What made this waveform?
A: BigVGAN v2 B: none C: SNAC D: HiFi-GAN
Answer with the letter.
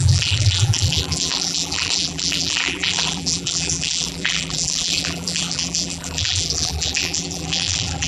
A